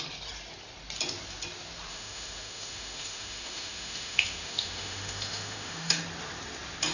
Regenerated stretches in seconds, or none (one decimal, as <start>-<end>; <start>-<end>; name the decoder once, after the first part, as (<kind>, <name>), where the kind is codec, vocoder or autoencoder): 1.9-6.0 (autoencoder, DAC-VAE)

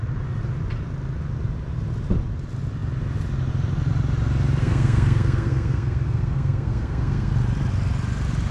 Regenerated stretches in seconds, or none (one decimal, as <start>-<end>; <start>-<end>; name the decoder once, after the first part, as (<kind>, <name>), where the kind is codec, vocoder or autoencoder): 4.6-7.3 (codec, SNAC)

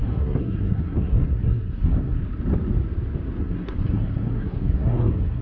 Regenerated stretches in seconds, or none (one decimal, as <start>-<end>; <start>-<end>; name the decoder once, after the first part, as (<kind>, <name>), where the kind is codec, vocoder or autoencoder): 0.0-2.2 (codec, SNAC); 3.4-5.4